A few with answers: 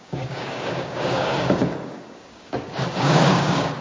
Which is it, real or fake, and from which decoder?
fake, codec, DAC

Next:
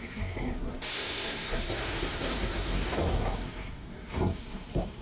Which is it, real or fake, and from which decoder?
fake, codec, SNAC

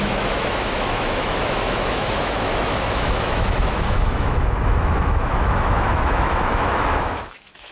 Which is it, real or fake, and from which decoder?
fake, autoencoder, DAC-VAE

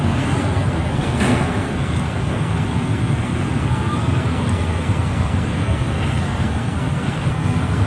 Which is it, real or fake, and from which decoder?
fake, codec, SNAC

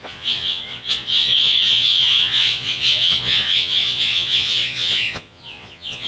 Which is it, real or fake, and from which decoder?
fake, vocoder, Vocos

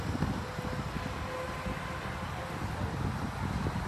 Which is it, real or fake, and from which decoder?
real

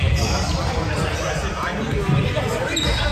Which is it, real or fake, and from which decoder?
real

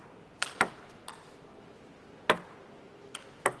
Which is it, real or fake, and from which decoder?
real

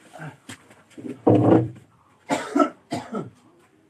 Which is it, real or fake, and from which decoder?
fake, vocoder, BigVGAN v2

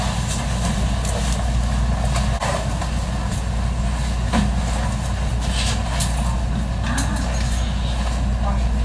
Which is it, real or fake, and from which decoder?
real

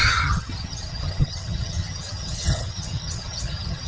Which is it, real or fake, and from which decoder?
fake, vocoder, HiFi-GAN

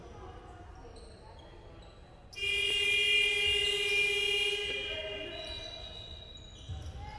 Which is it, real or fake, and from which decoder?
real